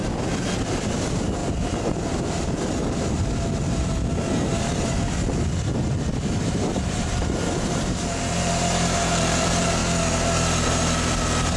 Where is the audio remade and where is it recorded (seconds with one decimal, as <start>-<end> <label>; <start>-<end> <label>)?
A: 0.0-0.7 recorded; 0.7-1.4 remade; 1.4-6.4 recorded; 6.4-9.8 remade; 9.8-11.6 recorded